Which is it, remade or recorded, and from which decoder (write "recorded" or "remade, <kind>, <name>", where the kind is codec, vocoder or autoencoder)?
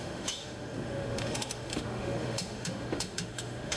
remade, autoencoder, DAC-VAE